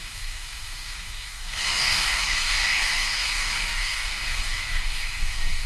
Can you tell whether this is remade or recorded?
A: remade